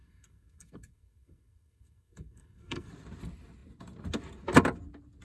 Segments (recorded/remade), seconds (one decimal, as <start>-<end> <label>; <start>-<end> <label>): 0.0-2.9 remade; 2.9-5.2 recorded